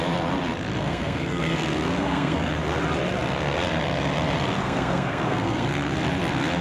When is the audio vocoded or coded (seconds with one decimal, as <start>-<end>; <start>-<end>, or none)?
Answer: 0.8-2.5; 4.6-5.7

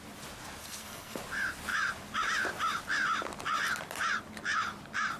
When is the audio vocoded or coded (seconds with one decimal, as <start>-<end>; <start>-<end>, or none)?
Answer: 0.6-1.2

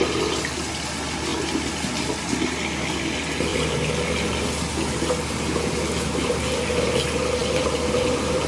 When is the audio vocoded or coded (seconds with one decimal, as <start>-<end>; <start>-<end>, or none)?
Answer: none

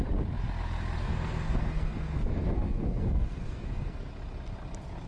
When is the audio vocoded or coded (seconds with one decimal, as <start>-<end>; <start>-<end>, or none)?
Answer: 1.0-4.1